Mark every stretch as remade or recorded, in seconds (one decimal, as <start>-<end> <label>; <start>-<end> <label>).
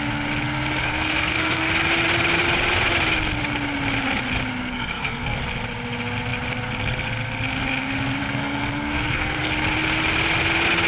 0.0-0.8 recorded; 0.8-1.7 remade; 1.7-4.6 recorded; 4.6-5.4 remade; 5.4-8.2 recorded; 8.2-9.5 remade; 9.5-10.9 recorded